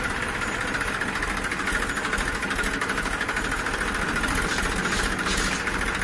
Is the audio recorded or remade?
recorded